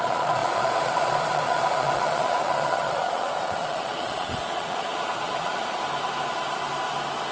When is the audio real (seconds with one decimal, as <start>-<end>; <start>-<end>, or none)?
5.8-7.3